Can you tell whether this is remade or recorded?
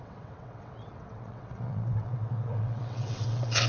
remade